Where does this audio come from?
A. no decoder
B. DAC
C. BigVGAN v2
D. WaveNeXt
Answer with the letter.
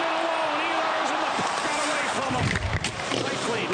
C